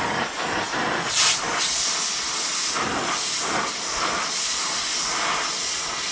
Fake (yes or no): no